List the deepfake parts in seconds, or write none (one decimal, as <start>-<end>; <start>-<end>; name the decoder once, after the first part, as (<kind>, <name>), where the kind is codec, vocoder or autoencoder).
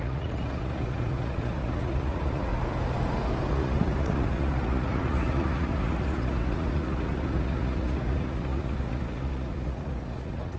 0.0-2.5 (vocoder, Vocos); 3.5-10.6